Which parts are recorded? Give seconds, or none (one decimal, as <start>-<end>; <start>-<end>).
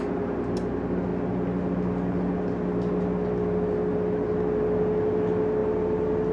0.0-6.3